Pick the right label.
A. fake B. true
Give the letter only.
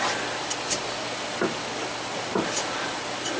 B